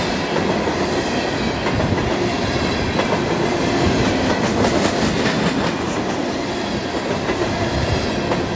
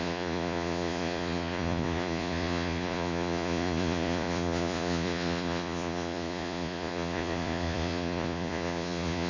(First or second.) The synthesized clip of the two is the second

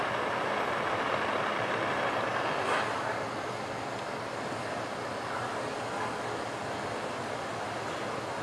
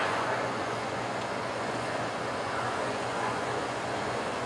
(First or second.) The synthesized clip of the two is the second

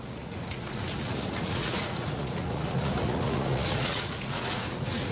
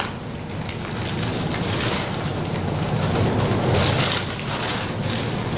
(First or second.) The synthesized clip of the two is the first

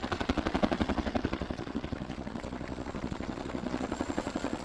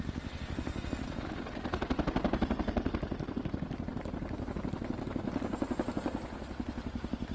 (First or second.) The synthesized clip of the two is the first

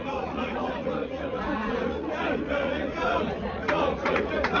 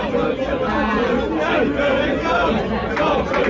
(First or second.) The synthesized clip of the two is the first